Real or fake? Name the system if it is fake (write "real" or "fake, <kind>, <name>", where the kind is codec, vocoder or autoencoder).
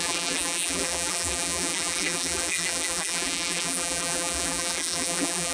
fake, vocoder, BigVGAN v2